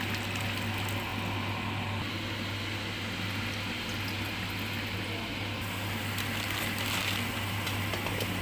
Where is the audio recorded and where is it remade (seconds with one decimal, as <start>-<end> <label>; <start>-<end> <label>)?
0.0-8.4 recorded